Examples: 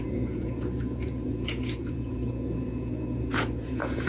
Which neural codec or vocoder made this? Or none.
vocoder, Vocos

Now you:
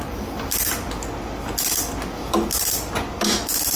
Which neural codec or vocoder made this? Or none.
none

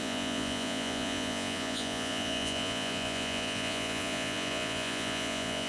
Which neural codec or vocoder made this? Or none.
vocoder, Vocos